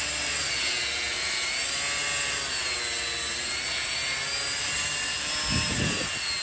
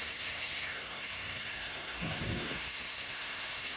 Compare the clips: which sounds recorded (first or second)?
first